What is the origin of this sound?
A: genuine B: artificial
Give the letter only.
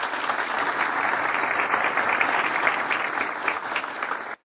A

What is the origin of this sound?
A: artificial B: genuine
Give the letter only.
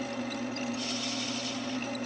B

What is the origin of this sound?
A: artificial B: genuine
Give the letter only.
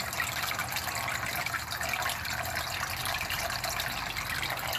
B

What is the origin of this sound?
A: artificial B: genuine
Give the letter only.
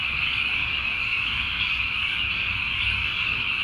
A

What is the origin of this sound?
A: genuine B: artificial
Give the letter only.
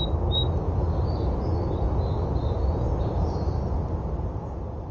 A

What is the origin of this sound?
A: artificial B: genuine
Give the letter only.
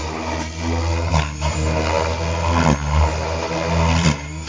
B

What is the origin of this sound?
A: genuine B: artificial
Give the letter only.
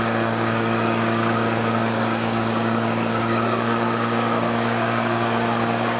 B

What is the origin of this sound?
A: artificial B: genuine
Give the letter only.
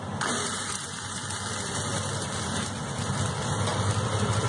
B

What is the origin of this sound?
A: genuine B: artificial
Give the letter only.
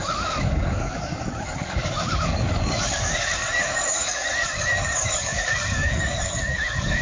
B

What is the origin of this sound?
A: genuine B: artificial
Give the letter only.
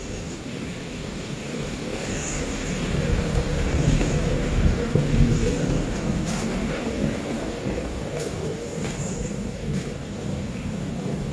B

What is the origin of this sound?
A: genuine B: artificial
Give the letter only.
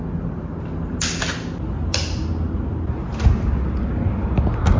A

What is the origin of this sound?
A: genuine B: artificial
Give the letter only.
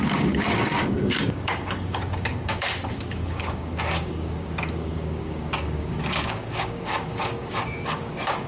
B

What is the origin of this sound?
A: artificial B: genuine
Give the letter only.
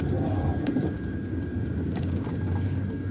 A